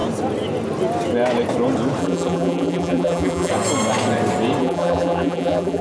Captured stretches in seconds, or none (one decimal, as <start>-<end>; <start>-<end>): 0.0-2.0; 3.5-4.6